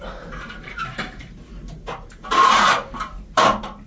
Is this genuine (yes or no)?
no